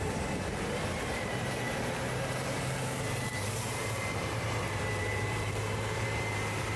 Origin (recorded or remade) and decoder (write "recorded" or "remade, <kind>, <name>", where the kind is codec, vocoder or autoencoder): remade, vocoder, BigVGAN v2